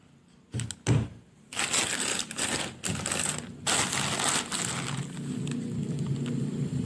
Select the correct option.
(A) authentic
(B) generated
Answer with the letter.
A